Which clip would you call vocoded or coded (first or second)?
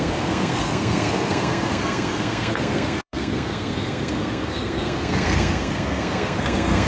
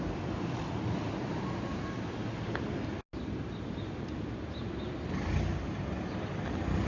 first